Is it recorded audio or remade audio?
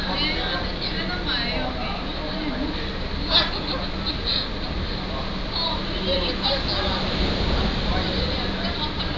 recorded